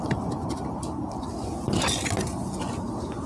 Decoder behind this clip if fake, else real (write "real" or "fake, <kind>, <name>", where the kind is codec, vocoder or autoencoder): real